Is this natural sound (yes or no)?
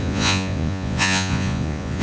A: no